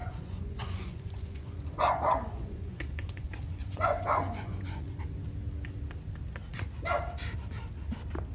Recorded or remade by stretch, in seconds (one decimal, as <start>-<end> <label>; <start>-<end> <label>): 0.0-5.0 remade; 5.0-8.3 recorded